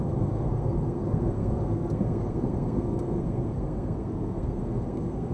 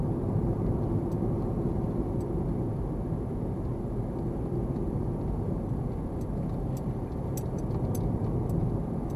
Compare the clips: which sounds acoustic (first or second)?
second